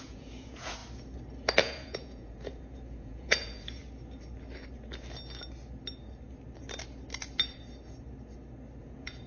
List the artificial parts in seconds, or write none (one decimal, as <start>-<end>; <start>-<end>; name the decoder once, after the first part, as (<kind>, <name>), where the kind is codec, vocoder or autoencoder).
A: 0.0-0.8 (vocoder, Vocos); 1.6-3.8; 8.8-9.3